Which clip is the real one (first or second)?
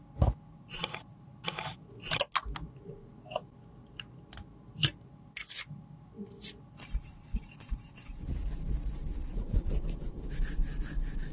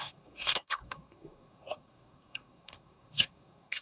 first